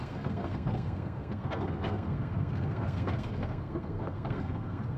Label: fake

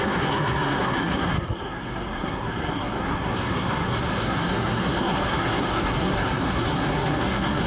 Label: fake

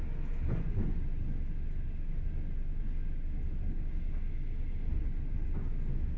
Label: real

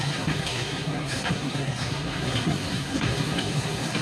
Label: fake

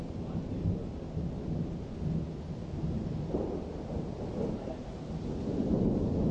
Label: real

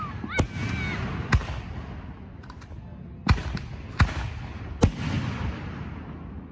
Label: real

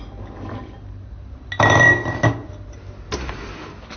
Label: real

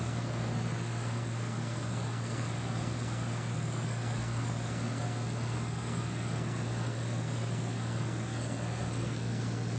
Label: fake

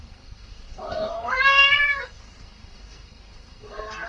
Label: fake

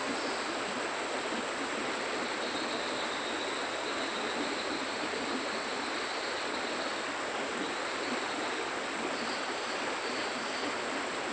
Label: real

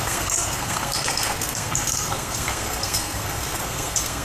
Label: fake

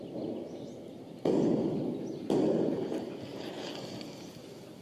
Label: real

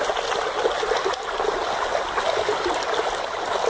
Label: real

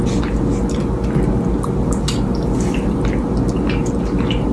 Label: real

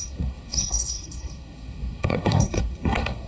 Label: fake